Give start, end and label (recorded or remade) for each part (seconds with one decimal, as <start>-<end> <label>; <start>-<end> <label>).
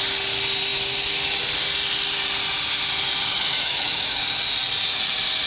0.0-3.3 recorded; 3.3-4.2 remade; 4.2-5.5 recorded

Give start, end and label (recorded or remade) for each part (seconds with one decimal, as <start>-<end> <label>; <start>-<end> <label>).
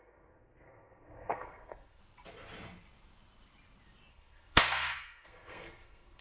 0.0-2.0 remade; 2.0-4.1 recorded; 4.1-6.2 remade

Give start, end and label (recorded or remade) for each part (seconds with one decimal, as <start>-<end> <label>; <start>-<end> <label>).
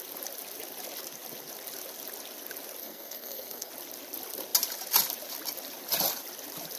0.0-2.8 recorded; 2.8-3.7 remade; 3.7-6.8 recorded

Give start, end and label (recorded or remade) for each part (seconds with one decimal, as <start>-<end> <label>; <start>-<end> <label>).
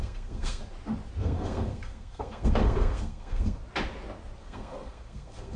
0.0-0.6 remade; 0.6-1.2 recorded; 1.2-3.6 remade; 3.6-4.4 recorded; 4.4-5.6 remade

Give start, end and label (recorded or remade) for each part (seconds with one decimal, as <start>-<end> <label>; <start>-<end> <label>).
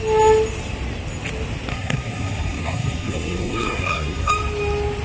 0.0-1.7 recorded; 1.7-4.3 remade; 4.3-5.0 recorded